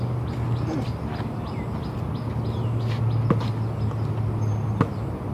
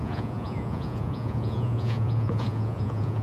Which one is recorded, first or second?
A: first